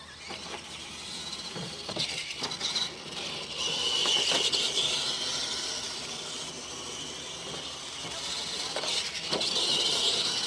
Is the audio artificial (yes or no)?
no